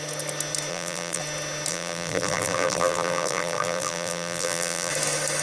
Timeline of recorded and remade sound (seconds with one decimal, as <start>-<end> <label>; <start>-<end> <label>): 0.0-0.7 recorded; 0.7-1.2 remade; 1.2-1.7 recorded; 1.7-4.9 remade; 4.9-5.4 recorded